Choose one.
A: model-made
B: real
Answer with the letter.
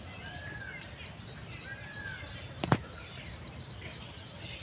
B